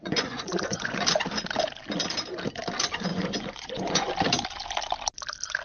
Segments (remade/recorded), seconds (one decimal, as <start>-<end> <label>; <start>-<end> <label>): 0.0-1.0 remade; 1.0-3.1 recorded; 3.1-4.1 remade; 4.1-5.6 recorded